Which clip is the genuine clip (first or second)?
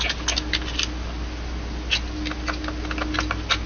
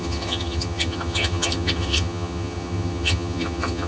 first